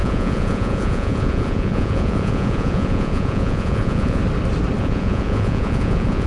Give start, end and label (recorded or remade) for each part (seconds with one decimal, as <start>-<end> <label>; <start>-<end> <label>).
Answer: 0.0-4.2 remade; 4.2-4.8 recorded; 4.8-6.3 remade